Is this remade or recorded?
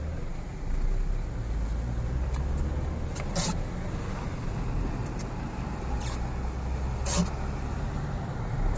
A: recorded